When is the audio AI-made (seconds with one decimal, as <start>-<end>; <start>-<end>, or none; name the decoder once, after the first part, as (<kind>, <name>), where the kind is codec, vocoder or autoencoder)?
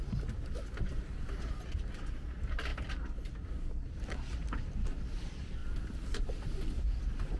0.0-2.7 (vocoder, BigVGAN v2); 3.3-5.6; 6.2-7.4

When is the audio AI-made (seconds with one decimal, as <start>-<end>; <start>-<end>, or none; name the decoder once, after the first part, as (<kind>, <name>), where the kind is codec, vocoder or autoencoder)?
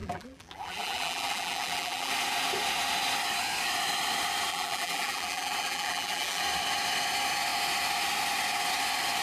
0.0-2.1 (vocoder, BigVGAN v2); 4.5-6.4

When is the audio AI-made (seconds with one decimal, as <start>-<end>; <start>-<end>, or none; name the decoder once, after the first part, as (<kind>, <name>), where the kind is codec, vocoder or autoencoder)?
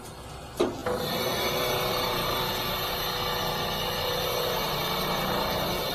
1.9-2.5 (vocoder, BigVGAN v2); 4.6-5.9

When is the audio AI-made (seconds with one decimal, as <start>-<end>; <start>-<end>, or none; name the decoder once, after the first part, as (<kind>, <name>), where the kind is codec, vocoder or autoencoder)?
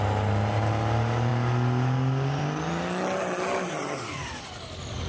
none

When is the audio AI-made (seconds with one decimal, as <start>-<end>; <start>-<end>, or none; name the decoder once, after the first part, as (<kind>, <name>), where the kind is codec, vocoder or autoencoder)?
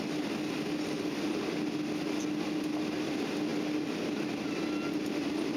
none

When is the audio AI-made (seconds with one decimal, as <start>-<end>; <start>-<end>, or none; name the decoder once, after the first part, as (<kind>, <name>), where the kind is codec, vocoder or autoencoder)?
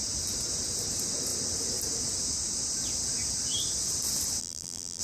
4.4-5.0 (vocoder, BigVGAN v2)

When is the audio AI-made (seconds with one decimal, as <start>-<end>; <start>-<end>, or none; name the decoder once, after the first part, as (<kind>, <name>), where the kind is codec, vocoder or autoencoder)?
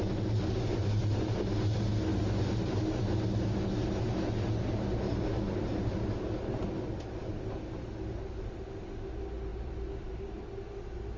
9.5-10.2 (vocoder, BigVGAN v2)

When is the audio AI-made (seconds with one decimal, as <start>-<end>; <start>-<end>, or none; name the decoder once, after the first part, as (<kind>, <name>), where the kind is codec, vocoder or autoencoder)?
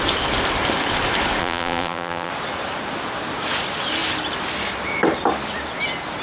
1.4-2.3 (vocoder, BigVGAN v2)